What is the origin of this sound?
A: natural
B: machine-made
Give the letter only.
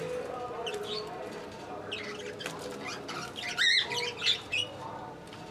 A